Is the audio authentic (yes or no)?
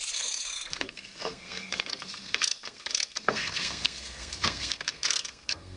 no